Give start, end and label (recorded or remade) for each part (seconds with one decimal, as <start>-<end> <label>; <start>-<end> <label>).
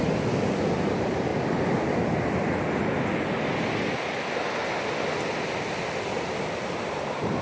0.0-7.4 recorded